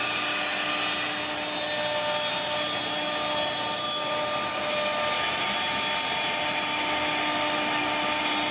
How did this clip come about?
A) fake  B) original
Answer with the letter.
B